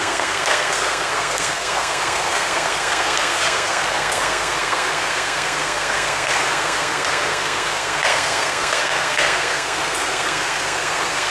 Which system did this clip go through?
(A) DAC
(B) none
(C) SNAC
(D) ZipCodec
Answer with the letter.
C